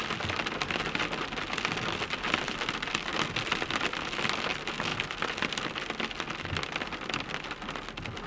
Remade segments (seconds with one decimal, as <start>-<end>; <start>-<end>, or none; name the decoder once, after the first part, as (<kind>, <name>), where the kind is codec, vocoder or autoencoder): none